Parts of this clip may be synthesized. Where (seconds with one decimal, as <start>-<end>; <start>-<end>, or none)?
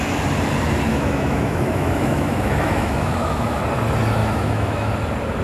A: 0.9-3.6; 4.2-4.9